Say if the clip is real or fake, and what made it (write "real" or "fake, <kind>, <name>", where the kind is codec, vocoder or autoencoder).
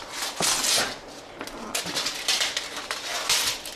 real